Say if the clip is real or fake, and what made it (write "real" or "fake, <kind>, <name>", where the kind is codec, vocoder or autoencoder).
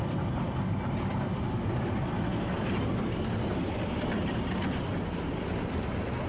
real